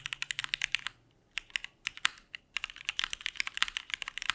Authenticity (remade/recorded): recorded